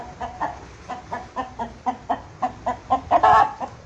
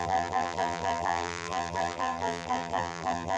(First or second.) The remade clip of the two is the second